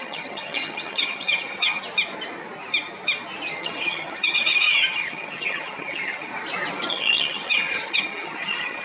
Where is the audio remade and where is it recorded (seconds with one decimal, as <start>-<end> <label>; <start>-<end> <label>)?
0.0-1.8 remade; 1.8-3.5 recorded; 3.5-6.3 remade; 6.3-6.9 recorded; 6.9-8.8 remade